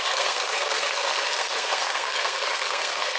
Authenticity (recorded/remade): remade